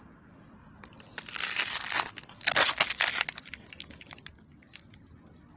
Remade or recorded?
recorded